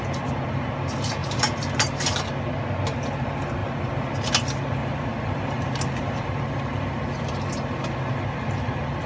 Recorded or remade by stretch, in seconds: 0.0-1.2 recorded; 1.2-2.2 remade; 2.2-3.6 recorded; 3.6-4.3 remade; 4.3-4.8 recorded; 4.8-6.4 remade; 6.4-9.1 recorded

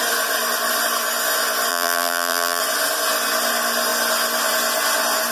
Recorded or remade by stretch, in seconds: 0.0-1.7 recorded; 1.7-2.6 remade; 2.6-5.3 recorded